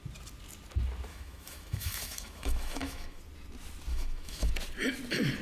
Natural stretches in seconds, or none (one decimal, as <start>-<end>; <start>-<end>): 0.0-1.1; 3.2-3.9; 4.5-5.4